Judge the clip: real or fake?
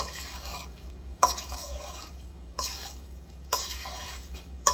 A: fake